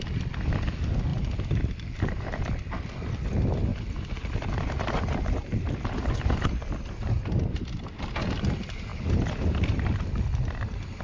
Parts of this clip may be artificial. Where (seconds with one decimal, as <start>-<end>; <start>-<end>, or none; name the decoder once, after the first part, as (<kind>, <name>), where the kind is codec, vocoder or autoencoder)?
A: 3.7-5.7 (vocoder, BigVGAN v2)

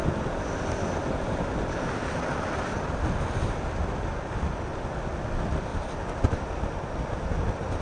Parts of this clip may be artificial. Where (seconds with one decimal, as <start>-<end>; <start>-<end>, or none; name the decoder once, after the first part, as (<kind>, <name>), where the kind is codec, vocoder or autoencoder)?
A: 0.0-1.5 (vocoder, BigVGAN v2); 5.7-6.5